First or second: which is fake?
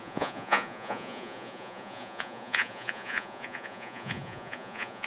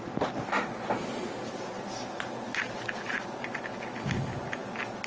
first